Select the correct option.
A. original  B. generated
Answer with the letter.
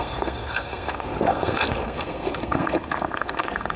B